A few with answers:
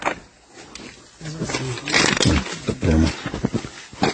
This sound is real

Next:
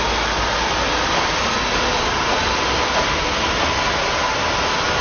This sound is real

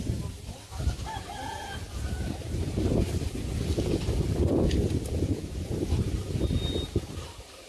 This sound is real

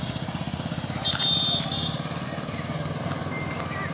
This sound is real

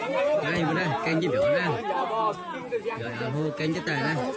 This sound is fake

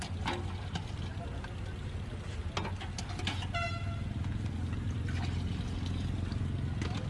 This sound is real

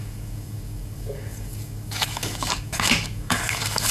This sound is fake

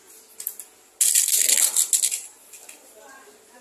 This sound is real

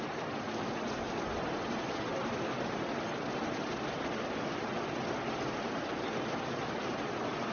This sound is real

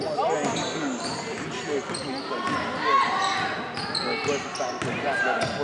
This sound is real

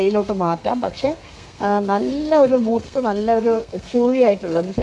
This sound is fake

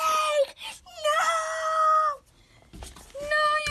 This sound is real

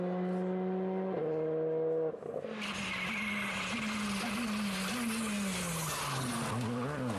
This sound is real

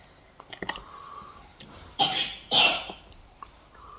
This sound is fake